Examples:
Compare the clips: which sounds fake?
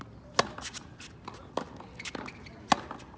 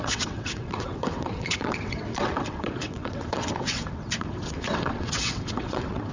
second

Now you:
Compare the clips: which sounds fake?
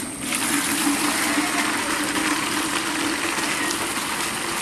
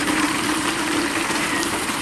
second